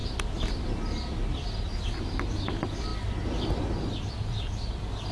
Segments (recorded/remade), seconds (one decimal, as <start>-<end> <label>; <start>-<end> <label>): 0.0-5.1 recorded